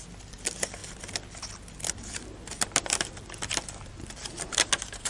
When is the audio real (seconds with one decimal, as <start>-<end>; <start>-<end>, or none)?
0.0-5.1